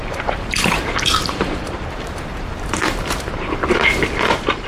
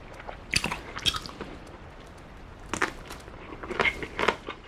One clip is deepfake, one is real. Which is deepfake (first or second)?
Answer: first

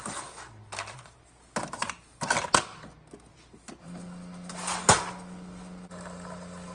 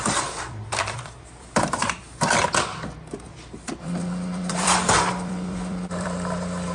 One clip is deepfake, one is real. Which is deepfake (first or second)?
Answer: second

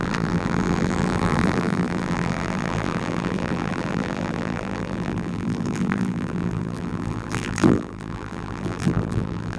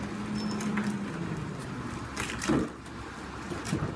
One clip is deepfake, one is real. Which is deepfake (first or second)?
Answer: first